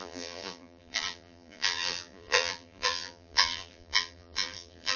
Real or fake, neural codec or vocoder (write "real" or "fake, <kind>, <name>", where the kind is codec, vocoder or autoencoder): fake, vocoder, BigVGAN v2